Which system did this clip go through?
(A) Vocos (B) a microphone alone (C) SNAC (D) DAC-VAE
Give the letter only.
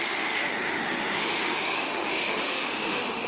D